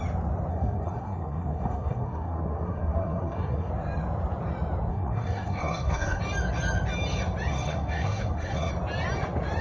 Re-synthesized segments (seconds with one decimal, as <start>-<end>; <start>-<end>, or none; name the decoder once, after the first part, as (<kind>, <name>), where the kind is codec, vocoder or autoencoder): 0.5-3.7 (codec, SNAC); 4.9-6.2; 7.5-8.7